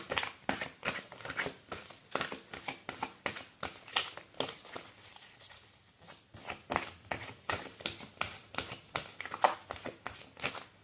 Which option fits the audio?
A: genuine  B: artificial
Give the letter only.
A